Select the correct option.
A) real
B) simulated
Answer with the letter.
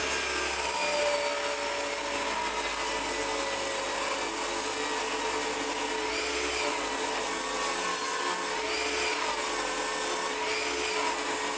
A